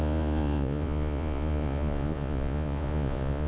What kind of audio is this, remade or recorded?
remade